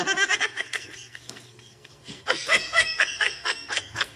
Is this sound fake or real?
fake